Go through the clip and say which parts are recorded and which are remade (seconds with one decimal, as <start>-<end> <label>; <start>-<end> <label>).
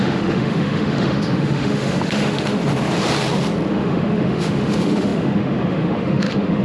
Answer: 0.0-2.6 remade; 2.6-3.7 recorded; 3.7-6.6 remade